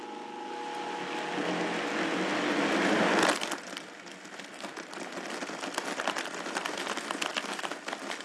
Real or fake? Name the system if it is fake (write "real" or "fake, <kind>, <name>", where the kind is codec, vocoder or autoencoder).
real